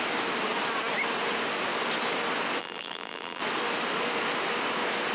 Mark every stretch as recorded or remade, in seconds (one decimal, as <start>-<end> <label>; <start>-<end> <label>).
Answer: 0.0-2.6 recorded; 2.6-3.4 remade; 3.4-5.1 recorded